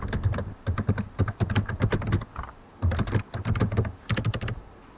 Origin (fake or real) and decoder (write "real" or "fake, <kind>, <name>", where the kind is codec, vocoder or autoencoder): real